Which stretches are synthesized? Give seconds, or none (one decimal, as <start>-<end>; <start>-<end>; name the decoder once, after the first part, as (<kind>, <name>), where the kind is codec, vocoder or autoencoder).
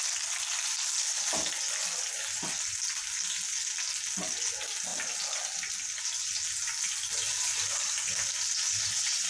1.8-2.5 (vocoder, BigVGAN v2); 4.9-6.0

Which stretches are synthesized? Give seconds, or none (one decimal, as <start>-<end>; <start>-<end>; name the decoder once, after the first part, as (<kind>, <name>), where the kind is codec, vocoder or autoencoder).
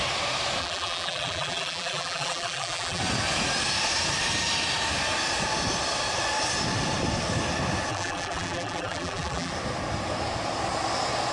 0.6-3.0 (vocoder, BigVGAN v2); 7.9-9.5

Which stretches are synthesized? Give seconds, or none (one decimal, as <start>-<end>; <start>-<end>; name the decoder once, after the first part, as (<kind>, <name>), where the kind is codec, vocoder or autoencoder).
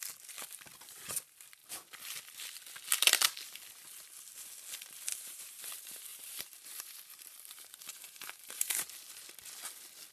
5.1-5.6 (vocoder, BigVGAN v2); 6.1-8.8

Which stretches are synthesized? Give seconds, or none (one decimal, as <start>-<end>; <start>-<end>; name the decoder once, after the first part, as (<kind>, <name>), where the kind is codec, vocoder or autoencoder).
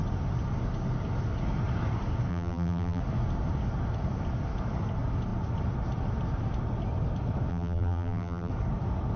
2.3-3.0 (vocoder, BigVGAN v2); 7.5-8.5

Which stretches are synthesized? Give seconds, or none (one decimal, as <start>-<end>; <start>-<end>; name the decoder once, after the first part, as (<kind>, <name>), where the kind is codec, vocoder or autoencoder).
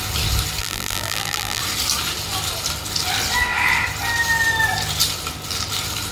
0.6-1.6 (vocoder, BigVGAN v2)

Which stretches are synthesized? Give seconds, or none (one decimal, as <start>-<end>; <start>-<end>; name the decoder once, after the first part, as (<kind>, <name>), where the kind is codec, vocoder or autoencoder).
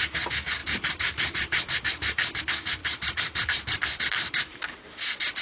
0.6-2.4 (vocoder, BigVGAN v2); 2.8-4.6